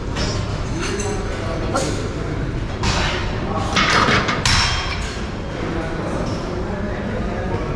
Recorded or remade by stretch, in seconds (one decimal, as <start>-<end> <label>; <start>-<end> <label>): 0.0-0.5 recorded; 0.5-1.0 remade; 1.0-7.8 recorded

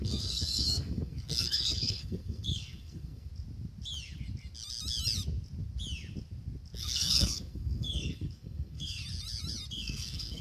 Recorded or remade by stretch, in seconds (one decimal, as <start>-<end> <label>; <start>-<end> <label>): 0.0-3.3 remade; 3.3-6.8 recorded; 6.8-9.0 remade; 9.0-9.7 recorded; 9.7-10.4 remade

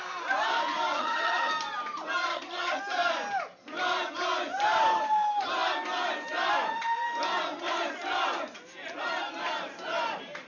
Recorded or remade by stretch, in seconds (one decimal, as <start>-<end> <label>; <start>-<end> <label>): 0.0-0.9 recorded; 0.9-1.5 remade; 1.5-2.3 recorded; 2.3-2.8 remade; 2.8-10.5 recorded

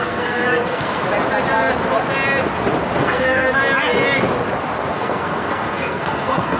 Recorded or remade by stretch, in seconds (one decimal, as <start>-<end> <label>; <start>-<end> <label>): 0.0-1.0 remade; 1.0-3.0 recorded; 3.0-3.6 remade; 3.6-4.9 recorded; 4.9-6.6 remade

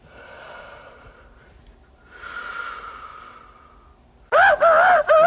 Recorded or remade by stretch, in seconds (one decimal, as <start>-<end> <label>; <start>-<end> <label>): 0.0-5.3 recorded

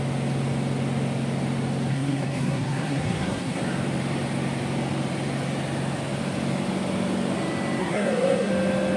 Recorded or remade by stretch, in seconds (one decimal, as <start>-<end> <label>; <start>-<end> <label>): 0.0-1.9 recorded; 1.9-3.6 remade; 3.6-7.8 recorded; 7.8-8.5 remade; 8.5-9.0 recorded

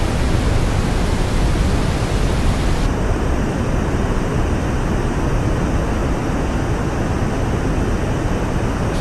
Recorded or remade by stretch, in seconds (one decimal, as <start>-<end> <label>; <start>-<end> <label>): 0.0-9.0 recorded

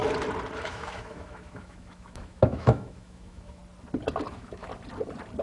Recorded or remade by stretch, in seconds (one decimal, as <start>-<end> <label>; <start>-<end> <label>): 0.0-0.6 recorded; 0.6-3.6 remade; 3.6-4.3 recorded; 4.3-4.7 remade; 4.7-5.4 recorded